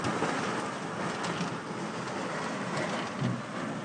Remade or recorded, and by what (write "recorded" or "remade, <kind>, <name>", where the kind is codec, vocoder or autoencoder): recorded